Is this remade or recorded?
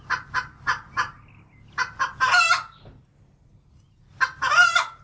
recorded